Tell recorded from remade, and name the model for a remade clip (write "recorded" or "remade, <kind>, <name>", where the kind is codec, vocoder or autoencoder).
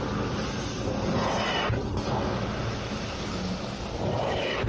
recorded